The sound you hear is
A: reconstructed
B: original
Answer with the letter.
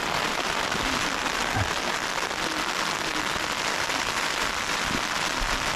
B